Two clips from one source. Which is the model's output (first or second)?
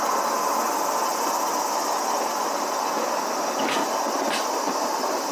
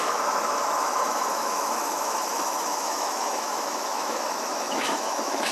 second